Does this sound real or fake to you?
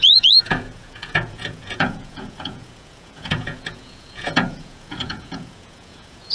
fake